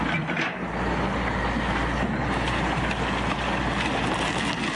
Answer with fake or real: real